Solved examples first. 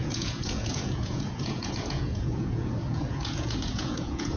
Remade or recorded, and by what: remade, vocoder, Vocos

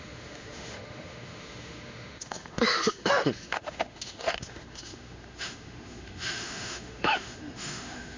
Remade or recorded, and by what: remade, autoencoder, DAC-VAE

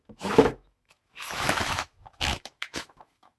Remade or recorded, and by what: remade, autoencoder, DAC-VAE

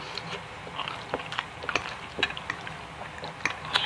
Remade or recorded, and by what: recorded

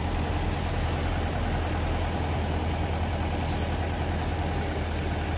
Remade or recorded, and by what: recorded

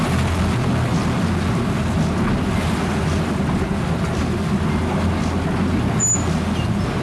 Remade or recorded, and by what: recorded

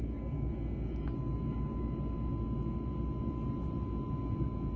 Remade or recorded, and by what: recorded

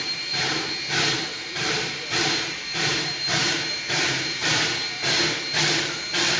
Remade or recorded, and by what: remade, vocoder, BigVGAN v2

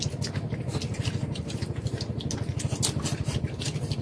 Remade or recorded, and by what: recorded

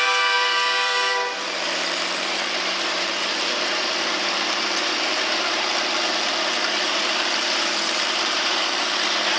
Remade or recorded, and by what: remade, vocoder, BigVGAN v2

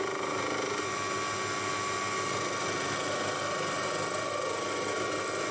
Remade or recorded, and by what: recorded